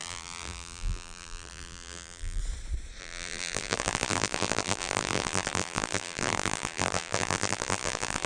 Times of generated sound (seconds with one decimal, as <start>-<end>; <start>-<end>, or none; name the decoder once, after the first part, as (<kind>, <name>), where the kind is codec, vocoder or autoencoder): 0.0-2.4 (vocoder, BigVGAN v2); 3.0-8.3